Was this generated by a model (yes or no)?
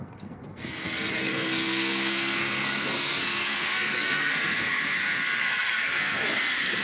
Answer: yes